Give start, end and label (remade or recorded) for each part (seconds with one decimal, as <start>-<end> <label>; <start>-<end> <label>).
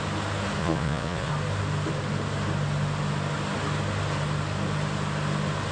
0.0-0.6 recorded; 0.6-1.3 remade; 1.3-5.7 recorded